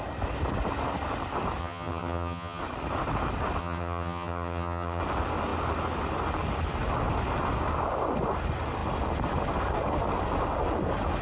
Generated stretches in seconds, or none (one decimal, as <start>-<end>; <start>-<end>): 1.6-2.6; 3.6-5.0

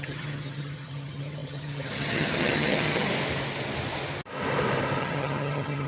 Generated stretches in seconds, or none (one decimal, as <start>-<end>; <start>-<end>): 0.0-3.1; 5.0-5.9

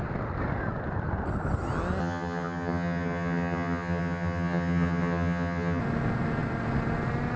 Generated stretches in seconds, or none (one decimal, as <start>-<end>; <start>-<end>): 2.0-5.8

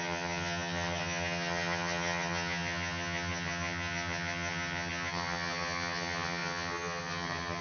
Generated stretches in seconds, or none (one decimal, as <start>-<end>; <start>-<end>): 0.0-7.6

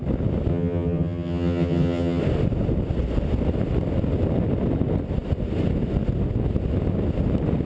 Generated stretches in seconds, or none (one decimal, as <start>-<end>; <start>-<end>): 0.5-2.2

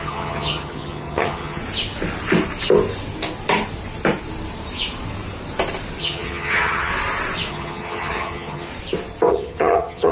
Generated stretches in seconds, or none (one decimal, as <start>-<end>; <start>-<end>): 0.0-1.6; 6.0-6.9; 7.5-8.7; 9.3-10.1